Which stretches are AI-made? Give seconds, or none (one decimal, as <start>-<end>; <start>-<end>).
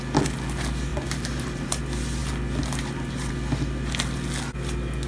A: 0.9-1.8